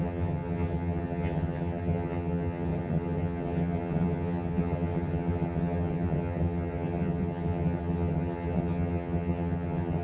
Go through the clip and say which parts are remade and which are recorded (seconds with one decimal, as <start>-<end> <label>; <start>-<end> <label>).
0.0-10.0 remade